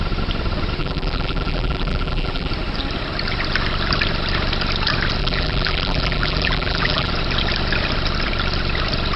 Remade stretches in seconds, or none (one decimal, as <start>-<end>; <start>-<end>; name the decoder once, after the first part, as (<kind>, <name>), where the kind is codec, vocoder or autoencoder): 0.8-2.5 (vocoder, BigVGAN v2); 5.2-7.1